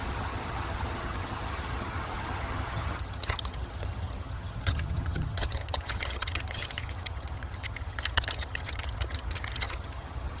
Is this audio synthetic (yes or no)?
yes